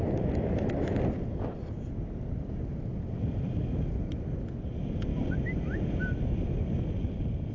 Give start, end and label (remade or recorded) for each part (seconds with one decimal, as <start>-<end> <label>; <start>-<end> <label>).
0.0-7.5 recorded